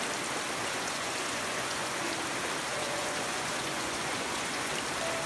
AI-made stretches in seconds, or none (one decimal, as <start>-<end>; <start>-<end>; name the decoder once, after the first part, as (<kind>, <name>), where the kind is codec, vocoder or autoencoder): 0.6-2.1 (vocoder, Vocos); 2.7-4.7